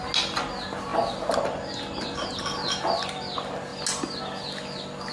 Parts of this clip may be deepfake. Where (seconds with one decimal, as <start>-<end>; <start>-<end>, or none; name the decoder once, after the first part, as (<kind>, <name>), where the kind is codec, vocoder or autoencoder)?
none